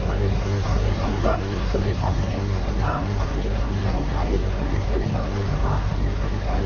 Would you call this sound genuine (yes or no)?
no